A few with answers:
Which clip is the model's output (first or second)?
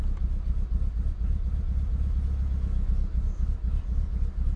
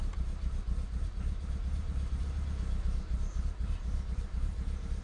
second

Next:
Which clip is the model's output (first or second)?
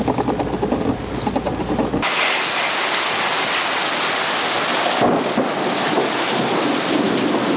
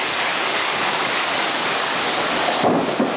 second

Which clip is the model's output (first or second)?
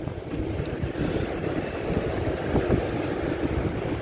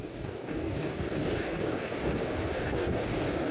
second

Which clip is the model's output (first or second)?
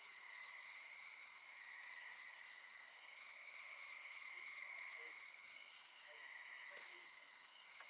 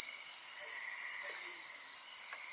first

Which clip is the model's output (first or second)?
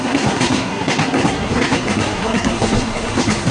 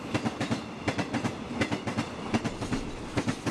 first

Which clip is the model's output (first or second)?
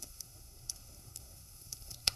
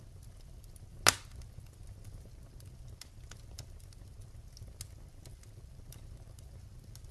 first